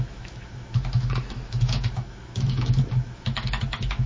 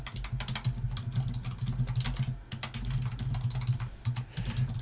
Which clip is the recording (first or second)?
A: second